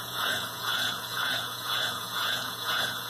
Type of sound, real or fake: fake